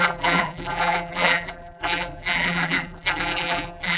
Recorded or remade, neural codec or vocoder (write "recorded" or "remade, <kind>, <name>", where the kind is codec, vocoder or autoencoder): remade, vocoder, BigVGAN v2